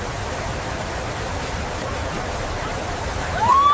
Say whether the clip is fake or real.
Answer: real